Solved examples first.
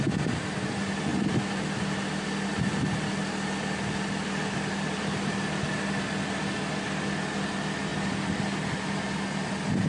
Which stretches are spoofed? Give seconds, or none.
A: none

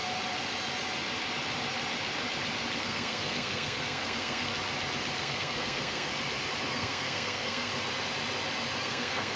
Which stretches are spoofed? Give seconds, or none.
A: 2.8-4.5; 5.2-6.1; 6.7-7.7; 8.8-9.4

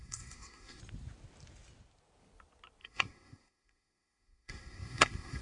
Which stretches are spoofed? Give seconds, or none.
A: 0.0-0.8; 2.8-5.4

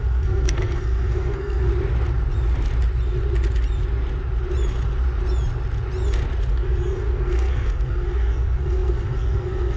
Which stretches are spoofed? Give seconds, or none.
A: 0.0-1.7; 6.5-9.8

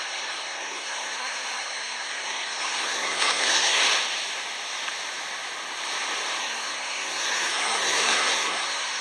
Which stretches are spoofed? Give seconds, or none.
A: 0.0-3.8; 6.4-9.0

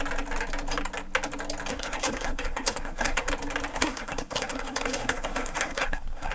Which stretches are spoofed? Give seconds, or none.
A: 1.7-3.3; 3.7-6.3